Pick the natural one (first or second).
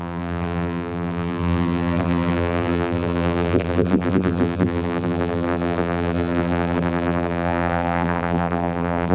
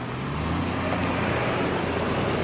second